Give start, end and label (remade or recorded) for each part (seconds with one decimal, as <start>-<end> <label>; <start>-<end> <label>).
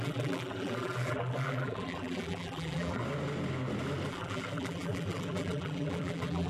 0.0-3.0 remade; 3.0-4.1 recorded; 4.1-6.5 remade